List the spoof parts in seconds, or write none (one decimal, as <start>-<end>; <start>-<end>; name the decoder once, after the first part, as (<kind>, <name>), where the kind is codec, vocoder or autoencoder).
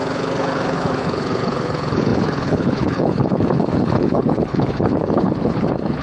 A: 0.0-6.0 (codec, HILCodec)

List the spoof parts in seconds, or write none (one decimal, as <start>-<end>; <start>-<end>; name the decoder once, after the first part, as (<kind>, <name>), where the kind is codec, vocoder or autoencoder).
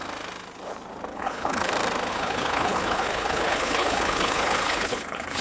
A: 1.1-1.7 (codec, HILCodec); 2.1-5.4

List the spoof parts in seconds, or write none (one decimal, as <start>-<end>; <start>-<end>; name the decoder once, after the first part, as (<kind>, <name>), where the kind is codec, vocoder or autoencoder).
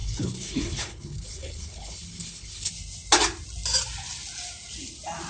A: 0.0-2.7 (codec, HILCodec)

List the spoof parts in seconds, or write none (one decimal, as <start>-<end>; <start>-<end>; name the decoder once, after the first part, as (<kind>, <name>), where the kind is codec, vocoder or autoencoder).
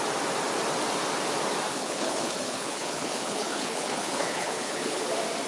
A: 1.7-5.0 (codec, HILCodec)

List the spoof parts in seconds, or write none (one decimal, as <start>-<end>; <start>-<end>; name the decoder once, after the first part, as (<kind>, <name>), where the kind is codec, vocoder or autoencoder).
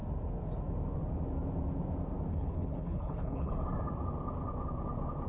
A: 2.3-3.5 (codec, HILCodec)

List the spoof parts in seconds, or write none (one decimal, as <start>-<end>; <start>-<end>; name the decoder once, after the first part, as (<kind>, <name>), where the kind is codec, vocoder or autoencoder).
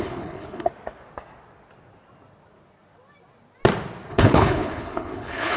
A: 0.0-0.7 (codec, HILCodec); 4.1-5.6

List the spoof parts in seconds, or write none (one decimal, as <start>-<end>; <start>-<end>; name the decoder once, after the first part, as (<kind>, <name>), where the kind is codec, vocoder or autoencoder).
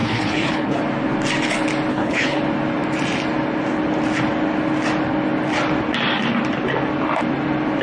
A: 0.0-0.8 (codec, HILCodec); 1.9-2.4